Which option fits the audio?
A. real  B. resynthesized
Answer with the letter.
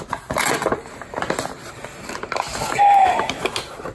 A